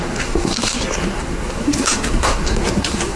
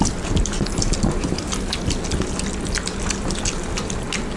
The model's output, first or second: first